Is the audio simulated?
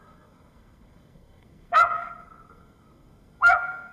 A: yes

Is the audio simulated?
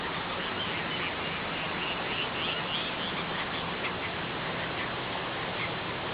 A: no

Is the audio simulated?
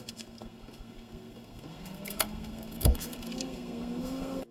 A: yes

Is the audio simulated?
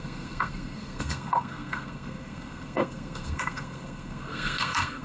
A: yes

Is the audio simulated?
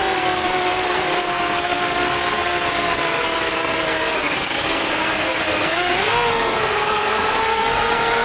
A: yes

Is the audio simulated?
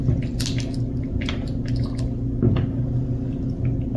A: no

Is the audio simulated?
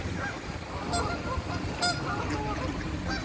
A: no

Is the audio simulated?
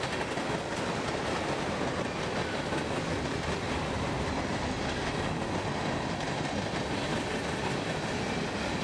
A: no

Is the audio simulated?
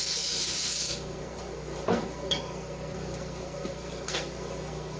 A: yes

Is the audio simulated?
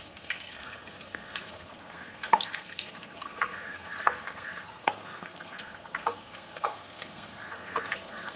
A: yes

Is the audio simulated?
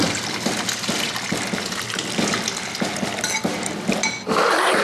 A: no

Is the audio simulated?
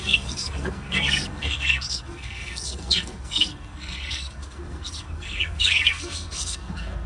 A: yes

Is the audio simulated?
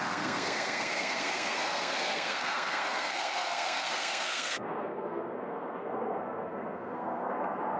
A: yes